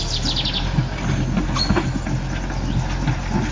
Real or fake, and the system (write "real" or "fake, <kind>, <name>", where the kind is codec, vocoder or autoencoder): real